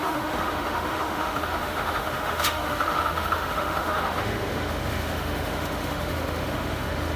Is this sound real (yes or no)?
no